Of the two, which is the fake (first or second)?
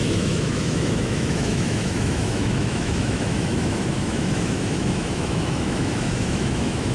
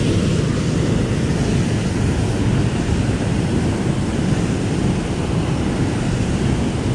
first